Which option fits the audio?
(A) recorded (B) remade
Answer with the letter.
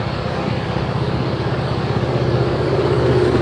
B